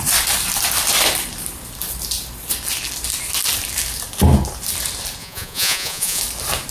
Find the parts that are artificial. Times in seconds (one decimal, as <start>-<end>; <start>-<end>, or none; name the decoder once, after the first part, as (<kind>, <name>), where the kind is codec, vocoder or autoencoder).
5.2-6.2 (vocoder, Vocos)